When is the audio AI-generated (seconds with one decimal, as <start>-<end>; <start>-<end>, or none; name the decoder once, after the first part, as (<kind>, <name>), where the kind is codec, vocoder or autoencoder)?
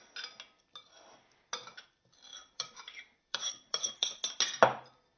2.3-4.2 (vocoder, BigVGAN v2)